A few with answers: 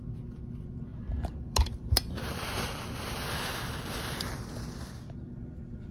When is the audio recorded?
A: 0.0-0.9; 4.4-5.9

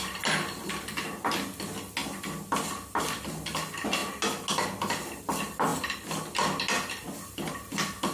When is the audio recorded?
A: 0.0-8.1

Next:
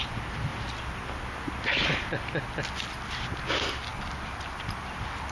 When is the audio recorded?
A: 0.0-5.3

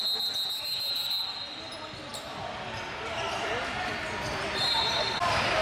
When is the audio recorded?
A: 0.0-5.6

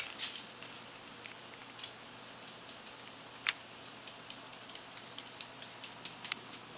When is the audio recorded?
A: 0.0-4.5; 5.1-6.8